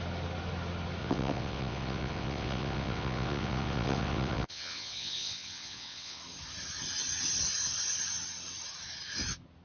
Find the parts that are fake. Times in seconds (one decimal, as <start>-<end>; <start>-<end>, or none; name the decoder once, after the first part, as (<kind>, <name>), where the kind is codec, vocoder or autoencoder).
1.0-6.2 (vocoder, WaveNeXt)